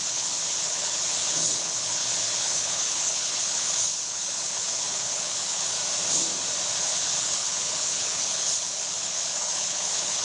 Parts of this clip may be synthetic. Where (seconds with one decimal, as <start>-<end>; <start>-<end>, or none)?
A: 0.0-5.8; 6.8-10.2